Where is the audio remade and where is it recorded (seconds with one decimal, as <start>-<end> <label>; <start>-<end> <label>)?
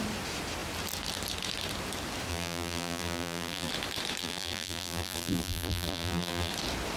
0.0-2.3 recorded; 2.3-3.7 remade; 3.7-4.2 recorded; 4.2-6.5 remade; 6.5-7.0 recorded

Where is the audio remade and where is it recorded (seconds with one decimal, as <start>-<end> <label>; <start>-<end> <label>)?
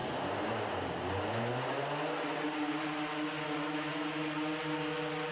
0.0-5.3 recorded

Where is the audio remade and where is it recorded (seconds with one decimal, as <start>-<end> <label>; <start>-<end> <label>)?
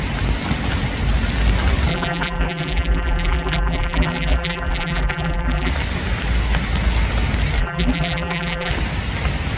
0.0-1.9 recorded; 1.9-5.7 remade; 5.7-7.6 recorded; 7.6-8.7 remade; 8.7-9.6 recorded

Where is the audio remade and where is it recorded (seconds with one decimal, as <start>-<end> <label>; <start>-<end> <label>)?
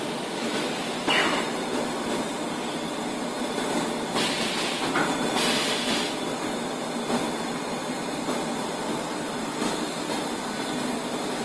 0.0-1.2 recorded; 1.2-4.1 remade; 4.1-11.4 recorded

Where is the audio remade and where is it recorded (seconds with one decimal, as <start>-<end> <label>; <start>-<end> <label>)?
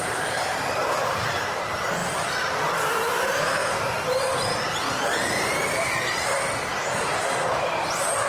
0.0-2.0 remade; 2.0-2.8 recorded; 2.8-3.6 remade; 3.6-4.2 recorded; 4.2-8.3 remade